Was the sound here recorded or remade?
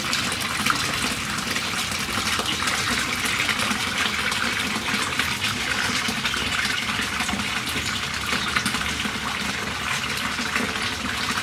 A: recorded